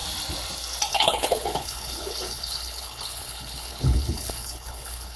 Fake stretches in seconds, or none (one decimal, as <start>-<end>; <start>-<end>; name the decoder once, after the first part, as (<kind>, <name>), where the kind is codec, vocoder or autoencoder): 0.9-5.2 (codec, HILCodec)